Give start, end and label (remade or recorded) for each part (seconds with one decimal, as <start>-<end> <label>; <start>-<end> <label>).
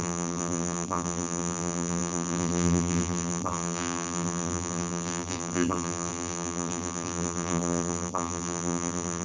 0.0-9.2 remade